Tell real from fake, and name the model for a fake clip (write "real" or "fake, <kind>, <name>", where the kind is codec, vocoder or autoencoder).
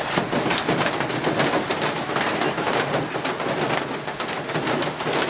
real